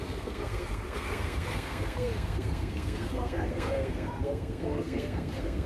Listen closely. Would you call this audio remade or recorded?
remade